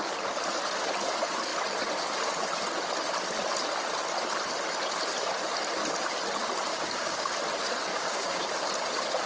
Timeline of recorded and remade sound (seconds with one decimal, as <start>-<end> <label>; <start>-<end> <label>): 0.0-6.7 recorded; 6.7-7.3 remade; 7.3-7.9 recorded; 7.9-8.5 remade; 8.5-9.3 recorded